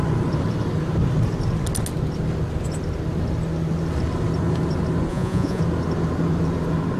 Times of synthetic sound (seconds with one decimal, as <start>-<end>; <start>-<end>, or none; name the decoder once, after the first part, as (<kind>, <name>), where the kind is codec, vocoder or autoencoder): 5.1-5.6 (vocoder, Vocos)